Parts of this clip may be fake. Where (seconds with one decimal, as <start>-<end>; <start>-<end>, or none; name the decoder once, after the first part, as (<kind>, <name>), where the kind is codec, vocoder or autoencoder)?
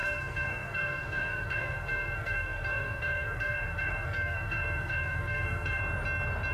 0.0-5.8 (codec, SNAC)